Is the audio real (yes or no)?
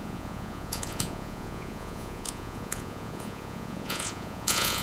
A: no